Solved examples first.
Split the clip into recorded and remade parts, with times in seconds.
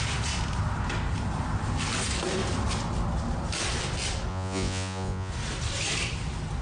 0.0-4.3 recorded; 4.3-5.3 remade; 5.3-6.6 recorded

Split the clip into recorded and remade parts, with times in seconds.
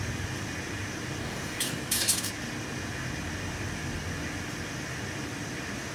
0.0-1.2 recorded; 1.2-2.3 remade; 2.3-5.9 recorded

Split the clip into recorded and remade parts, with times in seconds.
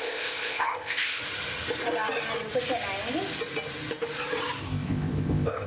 0.0-1.2 remade; 1.2-4.6 recorded; 4.6-5.7 remade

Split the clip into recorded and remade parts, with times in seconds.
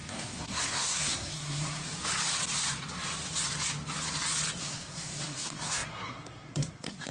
0.0-1.8 remade; 1.8-4.6 recorded; 4.6-7.1 remade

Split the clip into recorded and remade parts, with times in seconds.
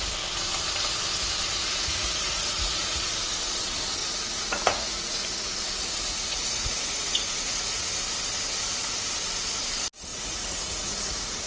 0.0-1.6 recorded; 1.6-3.1 remade; 3.1-4.0 recorded; 4.0-7.9 remade; 7.9-10.1 recorded; 10.1-11.5 remade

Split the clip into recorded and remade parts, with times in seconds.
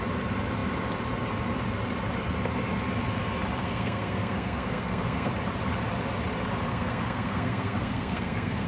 0.0-3.6 recorded; 3.6-5.3 remade; 5.3-6.7 recorded; 6.7-8.7 remade